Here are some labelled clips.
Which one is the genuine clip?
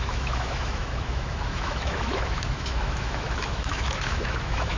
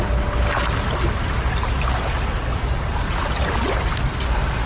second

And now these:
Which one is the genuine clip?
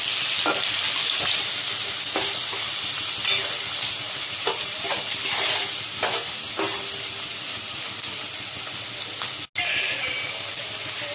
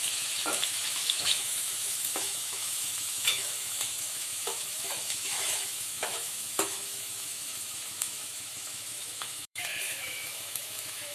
first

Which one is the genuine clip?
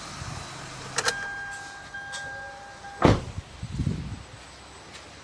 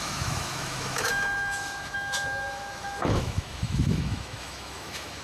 first